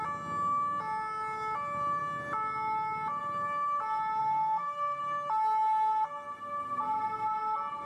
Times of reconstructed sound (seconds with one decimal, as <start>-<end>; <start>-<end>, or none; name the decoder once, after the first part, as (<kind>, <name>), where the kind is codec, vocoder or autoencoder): 4.2-5.0 (codec, SNAC)